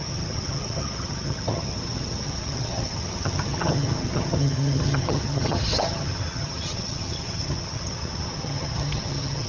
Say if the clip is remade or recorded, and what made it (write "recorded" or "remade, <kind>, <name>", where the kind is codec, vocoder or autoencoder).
remade, vocoder, HiFi-GAN